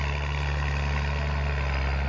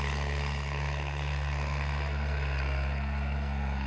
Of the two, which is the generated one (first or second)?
second